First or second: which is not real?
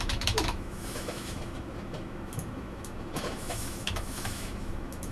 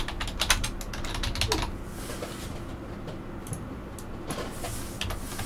first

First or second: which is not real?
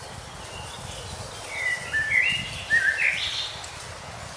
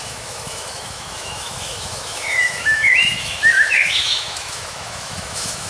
second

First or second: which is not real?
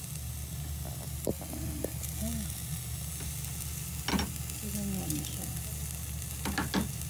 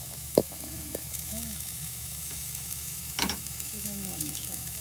second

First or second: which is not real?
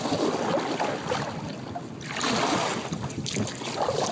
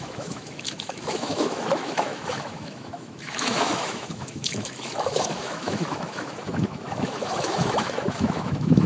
second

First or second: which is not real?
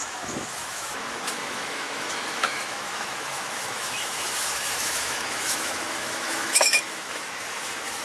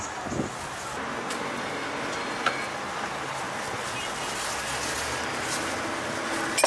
first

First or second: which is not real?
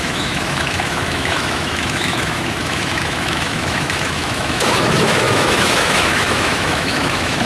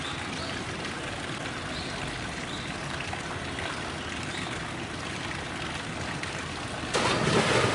first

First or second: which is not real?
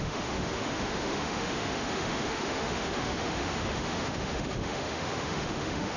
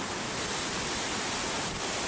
first